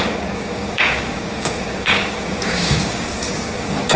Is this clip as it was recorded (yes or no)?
no